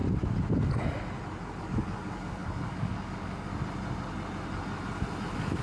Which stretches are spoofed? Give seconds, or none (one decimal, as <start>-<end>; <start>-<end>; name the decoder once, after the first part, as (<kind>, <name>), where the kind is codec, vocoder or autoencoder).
1.6-3.5 (codec, DAC)